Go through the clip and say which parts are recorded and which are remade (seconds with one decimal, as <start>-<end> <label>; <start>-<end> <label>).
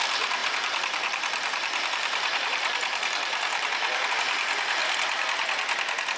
0.0-0.4 recorded; 0.4-4.1 remade; 4.1-6.2 recorded